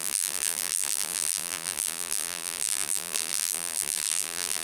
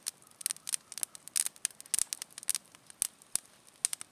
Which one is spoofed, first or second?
first